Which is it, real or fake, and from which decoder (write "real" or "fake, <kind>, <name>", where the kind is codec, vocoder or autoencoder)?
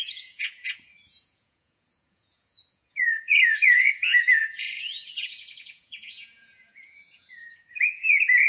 fake, vocoder, Vocos